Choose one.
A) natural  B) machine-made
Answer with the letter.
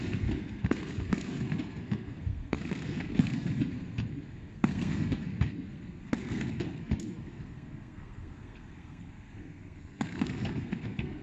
B